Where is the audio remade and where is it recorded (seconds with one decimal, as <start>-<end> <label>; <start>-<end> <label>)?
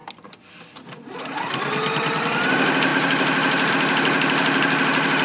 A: 0.0-5.2 recorded